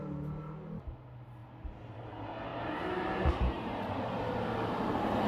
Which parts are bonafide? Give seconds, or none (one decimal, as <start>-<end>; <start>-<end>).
0.0-2.5; 3.3-5.3